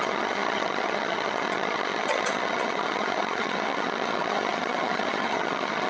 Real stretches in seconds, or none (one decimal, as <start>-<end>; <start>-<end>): none